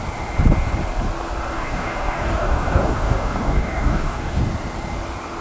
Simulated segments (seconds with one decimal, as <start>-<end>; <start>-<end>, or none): 1.5-4.4